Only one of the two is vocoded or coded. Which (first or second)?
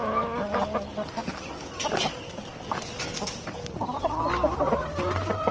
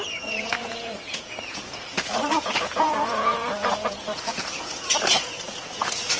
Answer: second